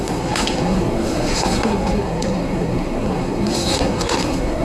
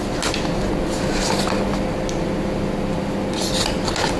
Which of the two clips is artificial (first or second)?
first